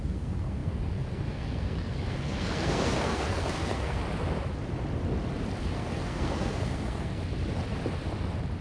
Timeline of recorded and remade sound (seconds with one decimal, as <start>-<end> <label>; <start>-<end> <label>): 0.0-4.0 remade; 4.0-5.6 recorded; 5.6-7.2 remade; 7.2-8.6 recorded